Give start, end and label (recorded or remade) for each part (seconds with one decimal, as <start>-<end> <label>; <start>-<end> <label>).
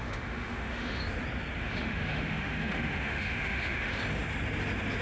0.0-1.0 remade; 1.0-1.6 recorded; 1.6-4.0 remade; 4.0-5.0 recorded